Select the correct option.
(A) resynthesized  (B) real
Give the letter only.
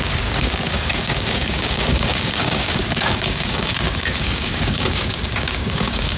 A